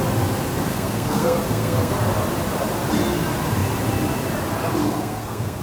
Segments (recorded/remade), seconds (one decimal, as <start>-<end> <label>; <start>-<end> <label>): 0.0-0.7 recorded; 0.7-1.9 remade; 1.9-4.8 recorded; 4.8-5.6 remade